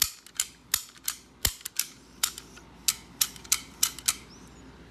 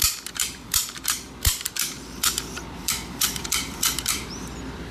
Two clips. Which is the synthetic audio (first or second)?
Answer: second